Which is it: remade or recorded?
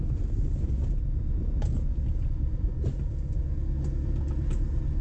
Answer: recorded